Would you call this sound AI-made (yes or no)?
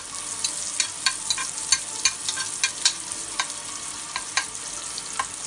no